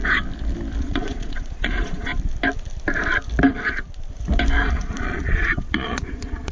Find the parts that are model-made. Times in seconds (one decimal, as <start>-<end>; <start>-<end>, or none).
0.8-2.1; 4.7-6.5